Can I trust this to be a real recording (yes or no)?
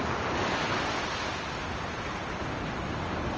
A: yes